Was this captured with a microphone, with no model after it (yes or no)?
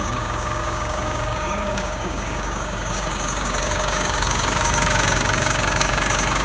no